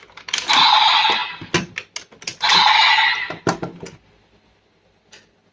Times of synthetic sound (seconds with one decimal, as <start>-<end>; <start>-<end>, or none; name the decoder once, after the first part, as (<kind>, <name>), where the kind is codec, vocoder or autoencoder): 2.3-3.4 (vocoder, BigVGAN v2)